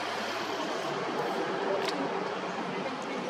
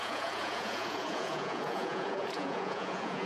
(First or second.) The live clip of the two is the first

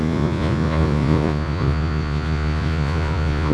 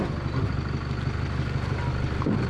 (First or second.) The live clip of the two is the second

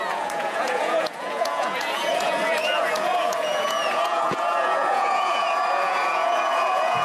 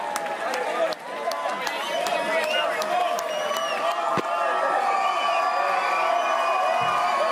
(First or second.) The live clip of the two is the second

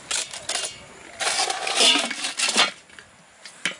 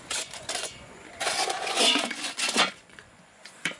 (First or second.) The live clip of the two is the first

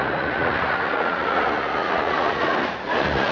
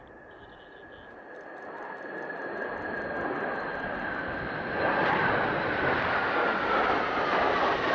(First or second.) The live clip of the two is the second